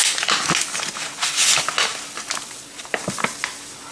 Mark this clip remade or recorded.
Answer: recorded